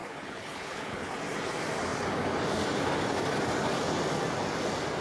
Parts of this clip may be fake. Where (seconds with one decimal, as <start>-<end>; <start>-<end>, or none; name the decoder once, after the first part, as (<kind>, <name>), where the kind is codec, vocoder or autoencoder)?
0.0-1.2 (codec, HILCodec)